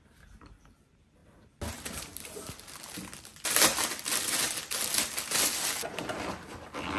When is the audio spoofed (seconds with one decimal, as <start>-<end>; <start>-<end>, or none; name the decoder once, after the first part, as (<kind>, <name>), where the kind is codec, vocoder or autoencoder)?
none

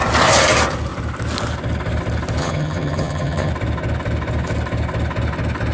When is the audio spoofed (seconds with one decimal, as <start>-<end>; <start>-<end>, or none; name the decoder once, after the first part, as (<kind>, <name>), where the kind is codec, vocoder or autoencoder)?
2.4-3.5 (vocoder, HiFi-GAN)